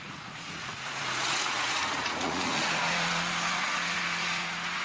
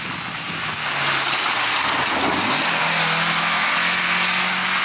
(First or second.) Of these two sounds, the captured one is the second